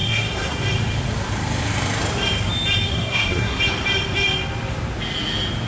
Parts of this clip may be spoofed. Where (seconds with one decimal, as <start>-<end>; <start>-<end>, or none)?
0.0-0.6; 2.9-3.6